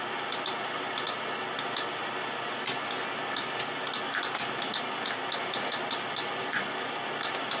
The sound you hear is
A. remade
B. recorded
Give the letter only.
B